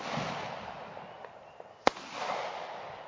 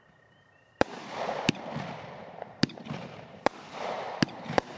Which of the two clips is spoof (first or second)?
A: second